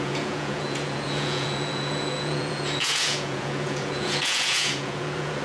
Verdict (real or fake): fake